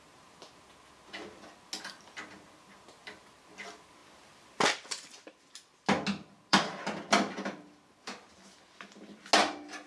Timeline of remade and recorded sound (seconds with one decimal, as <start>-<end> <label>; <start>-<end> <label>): 0.0-6.5 recorded; 6.5-7.0 remade; 7.0-9.9 recorded